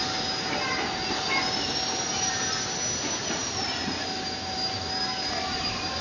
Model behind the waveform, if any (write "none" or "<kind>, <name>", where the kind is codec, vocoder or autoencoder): none